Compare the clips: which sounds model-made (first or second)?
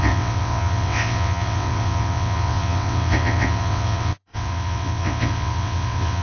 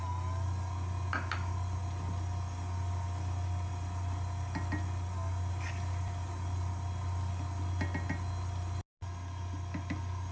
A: first